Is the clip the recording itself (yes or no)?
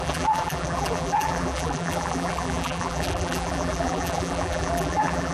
no